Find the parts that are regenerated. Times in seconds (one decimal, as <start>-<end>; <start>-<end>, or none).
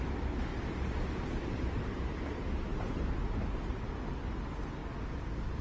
0.5-3.9